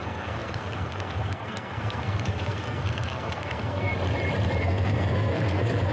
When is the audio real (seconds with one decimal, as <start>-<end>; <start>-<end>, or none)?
3.9-4.6

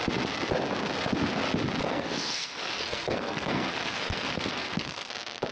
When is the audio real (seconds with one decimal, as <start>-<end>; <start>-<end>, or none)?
0.0-1.8; 5.1-5.5